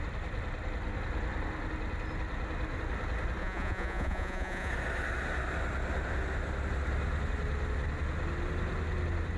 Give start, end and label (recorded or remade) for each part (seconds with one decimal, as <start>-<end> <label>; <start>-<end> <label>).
0.0-3.4 recorded; 3.4-4.7 remade; 4.7-9.4 recorded